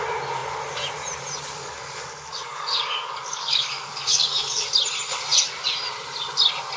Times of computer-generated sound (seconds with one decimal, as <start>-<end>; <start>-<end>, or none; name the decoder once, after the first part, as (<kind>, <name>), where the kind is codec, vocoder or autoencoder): 1.6-4.7 (codec, DAC)